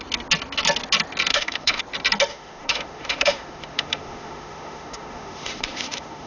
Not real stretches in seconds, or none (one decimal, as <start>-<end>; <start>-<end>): 1.3-1.8; 2.3-6.3